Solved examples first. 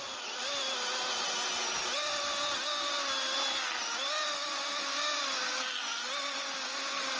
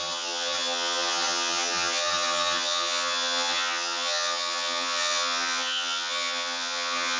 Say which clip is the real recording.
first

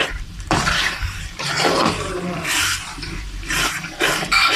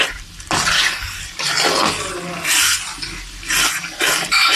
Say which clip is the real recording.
second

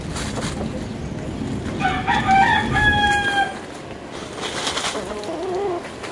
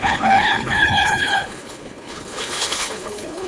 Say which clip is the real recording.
first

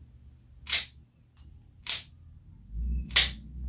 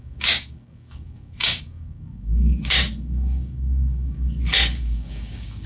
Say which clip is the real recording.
first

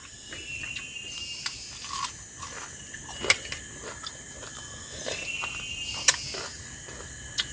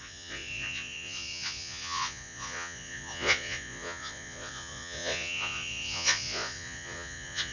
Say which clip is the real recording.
first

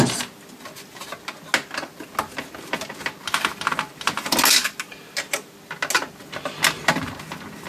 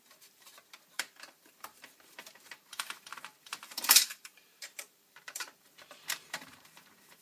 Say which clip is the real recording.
first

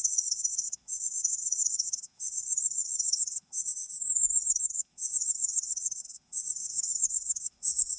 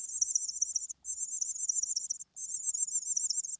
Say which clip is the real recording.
second